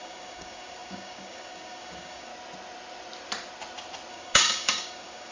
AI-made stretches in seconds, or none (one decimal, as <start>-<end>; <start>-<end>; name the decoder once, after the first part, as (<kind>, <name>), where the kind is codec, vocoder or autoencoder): 0.0-2.3 (codec, DAC); 4.1-5.3